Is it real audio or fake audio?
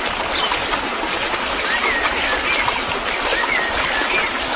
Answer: real